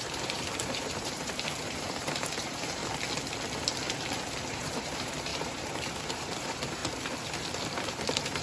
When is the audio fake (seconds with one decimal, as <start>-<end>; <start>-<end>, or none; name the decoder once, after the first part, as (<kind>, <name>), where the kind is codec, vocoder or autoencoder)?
0.0-2.8 (vocoder, BigVGAN v2); 4.5-6.8; 7.9-8.4